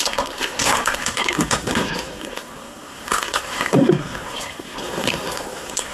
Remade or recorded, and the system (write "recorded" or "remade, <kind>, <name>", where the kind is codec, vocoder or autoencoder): remade, codec, SNAC